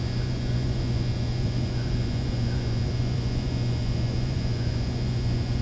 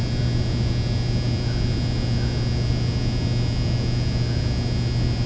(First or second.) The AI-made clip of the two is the first